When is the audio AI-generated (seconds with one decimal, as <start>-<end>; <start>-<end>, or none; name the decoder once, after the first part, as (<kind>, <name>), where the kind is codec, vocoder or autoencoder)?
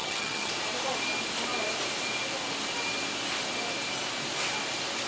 0.0-0.5 (vocoder, HiFi-GAN)